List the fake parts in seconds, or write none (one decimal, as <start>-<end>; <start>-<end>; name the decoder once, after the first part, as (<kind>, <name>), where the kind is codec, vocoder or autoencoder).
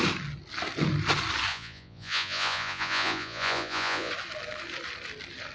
1.5-4.1 (vocoder, Vocos)